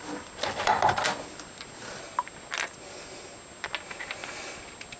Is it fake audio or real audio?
real